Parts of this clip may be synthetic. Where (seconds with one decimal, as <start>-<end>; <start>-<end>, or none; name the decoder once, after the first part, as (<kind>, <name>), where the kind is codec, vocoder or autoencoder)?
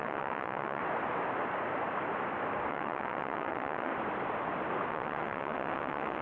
0.0-0.8 (vocoder, WaveNeXt); 2.7-3.9; 4.9-6.2